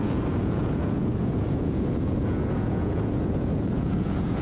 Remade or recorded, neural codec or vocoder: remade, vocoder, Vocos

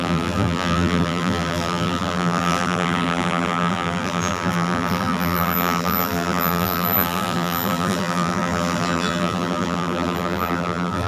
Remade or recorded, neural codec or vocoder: remade, vocoder, BigVGAN v2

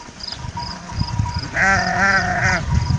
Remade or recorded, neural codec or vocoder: remade, vocoder, Vocos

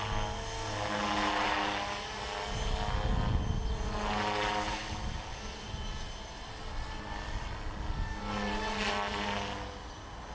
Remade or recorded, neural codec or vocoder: recorded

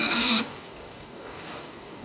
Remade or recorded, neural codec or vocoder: remade, codec, DAC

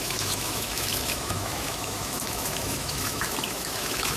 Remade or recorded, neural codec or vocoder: remade, autoencoder, DAC-VAE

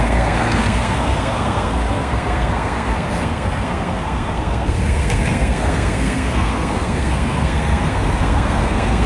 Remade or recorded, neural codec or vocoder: remade, codec, SNAC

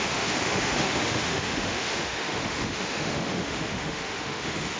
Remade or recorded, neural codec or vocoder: remade, autoencoder, DAC-VAE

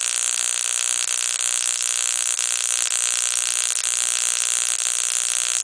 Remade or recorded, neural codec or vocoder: recorded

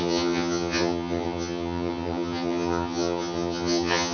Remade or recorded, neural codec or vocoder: remade, vocoder, HiFi-GAN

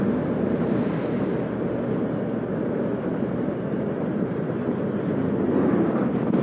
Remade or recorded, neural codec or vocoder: recorded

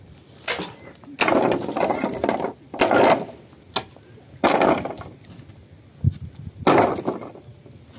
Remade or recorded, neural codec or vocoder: recorded